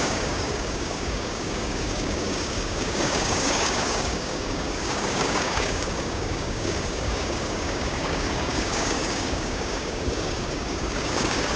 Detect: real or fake fake